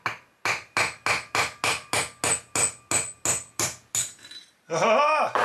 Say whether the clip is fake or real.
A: real